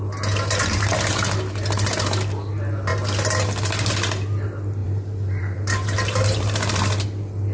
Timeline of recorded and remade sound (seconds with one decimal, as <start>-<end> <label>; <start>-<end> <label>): 0.0-4.8 recorded; 4.8-6.8 remade; 6.8-7.5 recorded